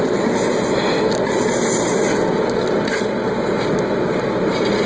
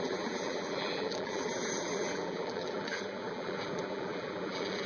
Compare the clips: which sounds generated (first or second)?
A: second